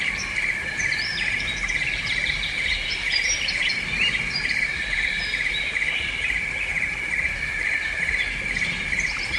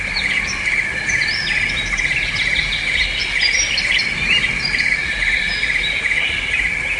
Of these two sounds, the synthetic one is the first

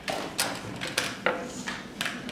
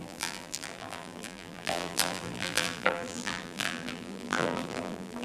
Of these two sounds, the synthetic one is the second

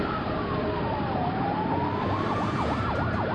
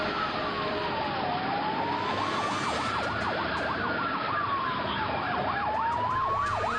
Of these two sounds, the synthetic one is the first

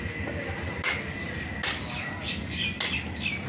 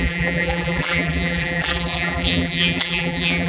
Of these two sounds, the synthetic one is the second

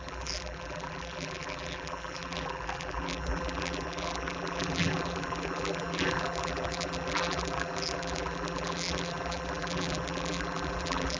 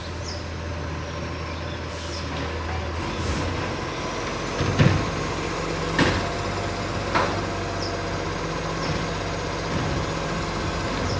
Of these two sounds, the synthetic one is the first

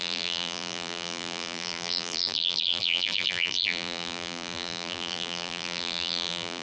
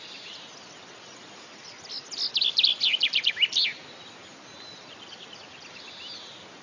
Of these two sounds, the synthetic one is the first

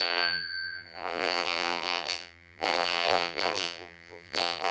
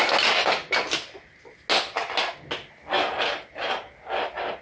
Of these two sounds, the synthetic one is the first